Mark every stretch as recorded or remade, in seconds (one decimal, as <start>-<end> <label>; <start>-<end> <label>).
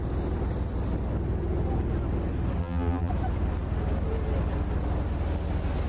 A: 0.0-2.6 recorded; 2.6-3.1 remade; 3.1-5.9 recorded